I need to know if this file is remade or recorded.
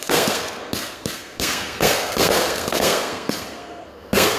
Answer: remade